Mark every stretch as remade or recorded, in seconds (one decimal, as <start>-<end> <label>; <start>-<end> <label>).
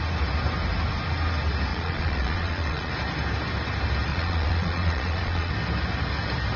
0.0-1.7 recorded; 1.7-2.9 remade; 2.9-4.1 recorded; 4.1-5.5 remade; 5.5-6.6 recorded